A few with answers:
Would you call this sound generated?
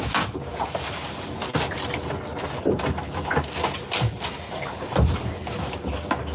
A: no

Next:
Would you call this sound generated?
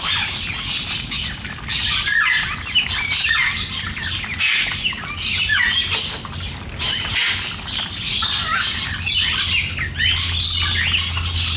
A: no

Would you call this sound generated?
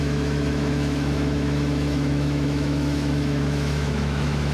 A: yes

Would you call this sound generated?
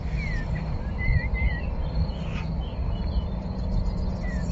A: no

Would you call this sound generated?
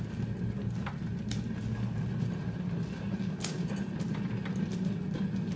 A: no